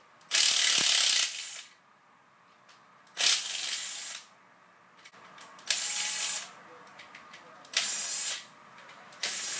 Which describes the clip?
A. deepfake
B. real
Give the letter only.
B